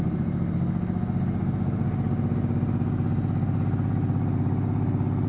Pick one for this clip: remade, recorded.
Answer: recorded